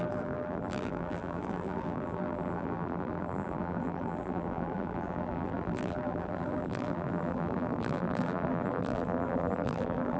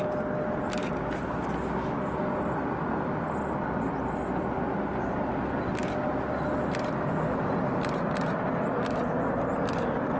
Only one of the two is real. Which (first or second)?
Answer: second